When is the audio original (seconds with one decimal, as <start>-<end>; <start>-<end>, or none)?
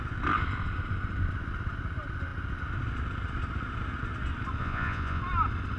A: 0.0-4.6; 5.2-5.8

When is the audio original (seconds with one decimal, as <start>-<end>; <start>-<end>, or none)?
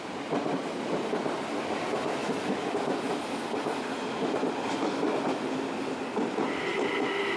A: 0.0-7.4